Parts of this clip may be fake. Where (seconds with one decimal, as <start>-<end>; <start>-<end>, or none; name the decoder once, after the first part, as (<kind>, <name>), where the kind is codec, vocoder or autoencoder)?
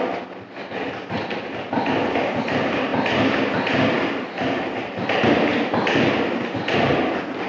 none